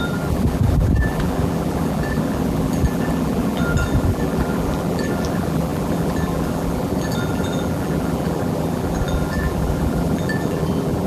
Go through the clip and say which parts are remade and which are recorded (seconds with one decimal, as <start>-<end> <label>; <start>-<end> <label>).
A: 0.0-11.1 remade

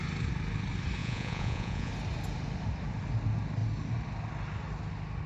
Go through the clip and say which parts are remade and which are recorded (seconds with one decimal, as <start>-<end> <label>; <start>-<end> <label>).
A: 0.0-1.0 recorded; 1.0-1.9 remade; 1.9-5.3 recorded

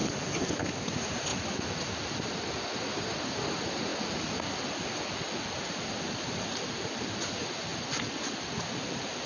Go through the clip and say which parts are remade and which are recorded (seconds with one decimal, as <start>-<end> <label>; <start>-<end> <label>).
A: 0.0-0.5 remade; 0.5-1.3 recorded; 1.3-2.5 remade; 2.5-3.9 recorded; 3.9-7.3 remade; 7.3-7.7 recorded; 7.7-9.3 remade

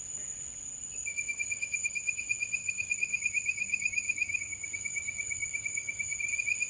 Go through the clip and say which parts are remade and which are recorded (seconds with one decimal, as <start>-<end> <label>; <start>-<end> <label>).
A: 0.0-0.9 recorded; 0.9-2.2 remade; 2.2-2.6 recorded; 2.6-6.3 remade; 6.3-6.7 recorded

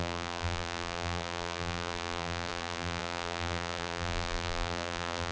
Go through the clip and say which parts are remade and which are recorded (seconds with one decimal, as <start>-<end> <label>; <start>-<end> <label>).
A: 0.0-5.3 remade

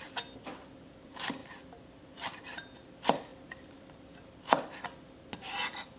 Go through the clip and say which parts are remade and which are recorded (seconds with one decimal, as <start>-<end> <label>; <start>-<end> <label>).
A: 0.0-1.4 recorded; 1.4-2.4 remade; 2.4-3.3 recorded; 3.3-4.8 remade; 4.8-6.0 recorded

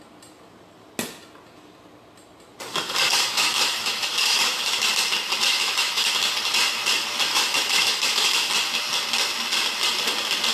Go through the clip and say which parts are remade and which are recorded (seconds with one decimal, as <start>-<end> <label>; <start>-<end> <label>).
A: 0.0-3.1 recorded; 3.1-4.9 remade; 4.9-5.5 recorded; 5.5-6.1 remade; 6.1-7.3 recorded; 7.3-8.5 remade; 8.5-10.5 recorded